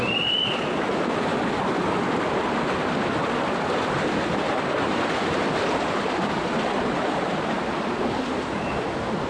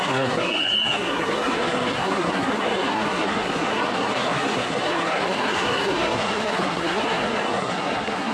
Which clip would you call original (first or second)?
first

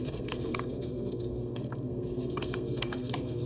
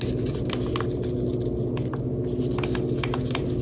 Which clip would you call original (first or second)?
second